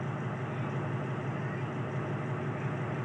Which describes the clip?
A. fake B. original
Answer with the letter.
B